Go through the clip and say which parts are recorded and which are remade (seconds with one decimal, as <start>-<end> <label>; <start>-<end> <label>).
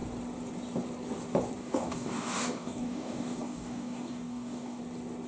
0.0-1.6 recorded; 1.6-4.8 remade; 4.8-5.3 recorded